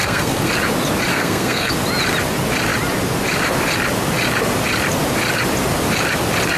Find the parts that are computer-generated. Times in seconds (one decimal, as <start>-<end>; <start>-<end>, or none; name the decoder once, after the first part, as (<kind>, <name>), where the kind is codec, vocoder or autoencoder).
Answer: 0.0-0.5 (codec, SNAC); 1.1-1.7